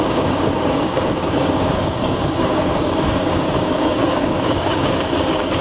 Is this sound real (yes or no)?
no